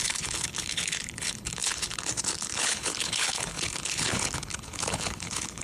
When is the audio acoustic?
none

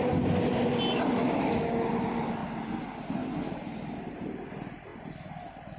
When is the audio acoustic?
0.0-1.2; 1.9-5.8